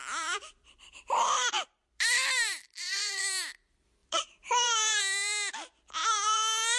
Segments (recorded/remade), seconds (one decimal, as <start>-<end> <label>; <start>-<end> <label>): 0.0-3.2 remade; 3.2-4.0 recorded; 4.0-5.0 remade; 5.0-6.0 recorded; 6.0-6.8 remade